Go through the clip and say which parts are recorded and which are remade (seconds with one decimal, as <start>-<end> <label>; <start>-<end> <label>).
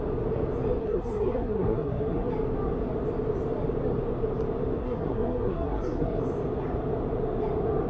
0.0-0.8 recorded; 0.8-2.3 remade; 2.3-4.8 recorded; 4.8-6.2 remade; 6.2-7.9 recorded